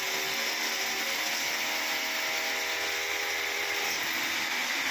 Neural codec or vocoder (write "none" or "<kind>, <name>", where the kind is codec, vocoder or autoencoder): none